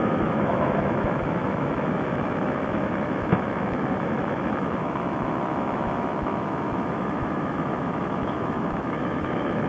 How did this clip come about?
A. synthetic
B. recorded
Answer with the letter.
A